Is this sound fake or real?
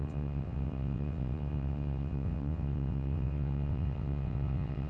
fake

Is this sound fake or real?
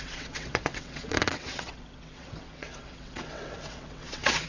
fake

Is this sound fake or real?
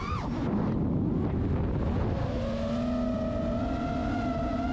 real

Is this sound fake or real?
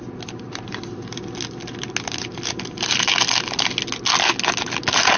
real